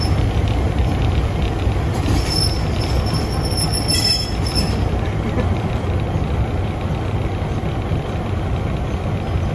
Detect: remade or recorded recorded